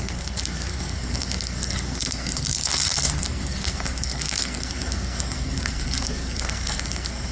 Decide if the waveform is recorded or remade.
remade